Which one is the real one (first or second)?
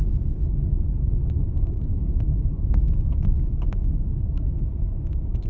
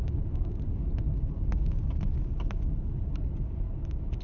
second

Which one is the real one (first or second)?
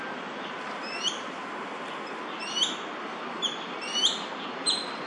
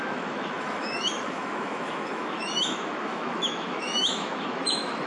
first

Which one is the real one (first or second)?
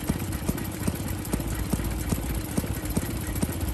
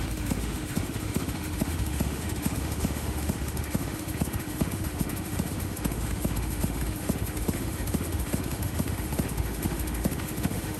first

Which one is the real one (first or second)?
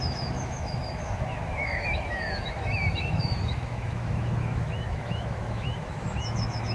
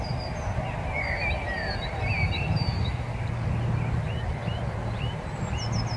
second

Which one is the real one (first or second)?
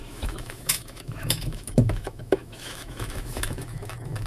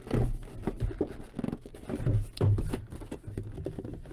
second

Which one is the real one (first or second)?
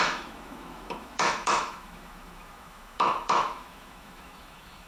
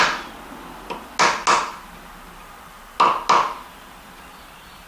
second